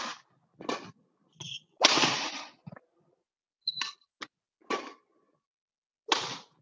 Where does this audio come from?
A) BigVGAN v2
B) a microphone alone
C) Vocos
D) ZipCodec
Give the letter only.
B